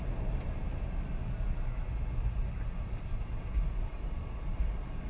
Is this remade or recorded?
recorded